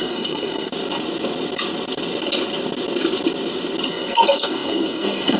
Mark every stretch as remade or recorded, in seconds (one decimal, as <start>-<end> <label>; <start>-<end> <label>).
0.0-0.7 remade; 0.7-3.9 recorded; 3.9-5.4 remade